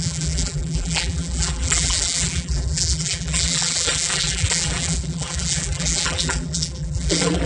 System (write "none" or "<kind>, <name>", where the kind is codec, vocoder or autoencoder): vocoder, BigVGAN v2